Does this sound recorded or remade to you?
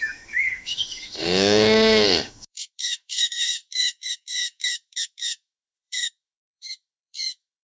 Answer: remade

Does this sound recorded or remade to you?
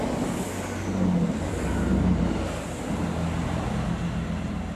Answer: recorded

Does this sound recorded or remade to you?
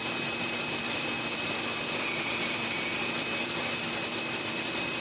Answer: remade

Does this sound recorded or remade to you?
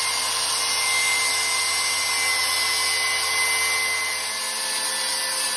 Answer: recorded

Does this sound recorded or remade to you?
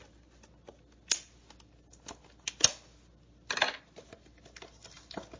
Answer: recorded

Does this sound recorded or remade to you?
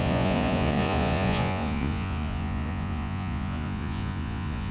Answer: remade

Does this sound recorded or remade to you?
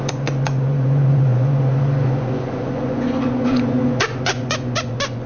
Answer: remade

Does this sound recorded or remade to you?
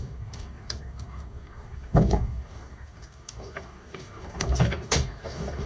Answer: remade